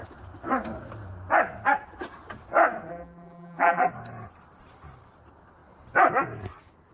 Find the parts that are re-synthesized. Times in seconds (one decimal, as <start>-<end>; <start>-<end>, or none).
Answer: 2.9-3.9